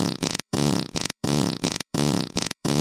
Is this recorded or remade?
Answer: remade